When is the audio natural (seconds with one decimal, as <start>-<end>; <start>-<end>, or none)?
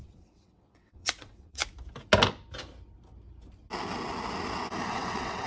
1.6-4.9